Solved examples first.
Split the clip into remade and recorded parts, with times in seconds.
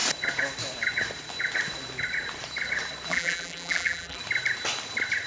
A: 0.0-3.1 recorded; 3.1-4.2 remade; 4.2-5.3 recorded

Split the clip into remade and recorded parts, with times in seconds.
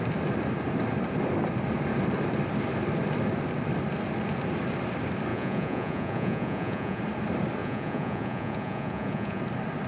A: 0.0-5.3 recorded; 5.3-7.0 remade; 7.0-7.6 recorded; 7.6-9.4 remade; 9.4-9.9 recorded